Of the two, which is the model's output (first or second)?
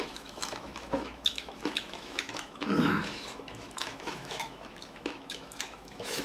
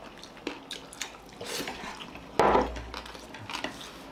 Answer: first